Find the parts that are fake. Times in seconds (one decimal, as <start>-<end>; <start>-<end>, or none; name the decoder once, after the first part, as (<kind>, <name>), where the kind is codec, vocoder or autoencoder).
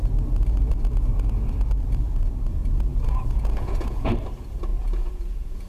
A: 2.9-4.1 (vocoder, Vocos); 4.7-5.7